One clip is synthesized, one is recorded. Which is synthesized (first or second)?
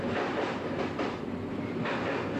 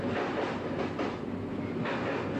first